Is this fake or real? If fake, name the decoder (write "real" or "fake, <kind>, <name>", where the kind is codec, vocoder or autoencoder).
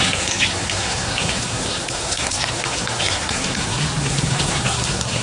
fake, codec, SNAC